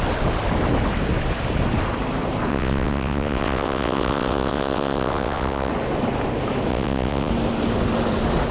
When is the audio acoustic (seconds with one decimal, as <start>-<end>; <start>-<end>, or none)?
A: 0.0-2.5; 5.7-6.7; 7.3-8.5